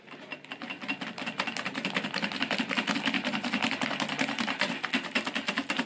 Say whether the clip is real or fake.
real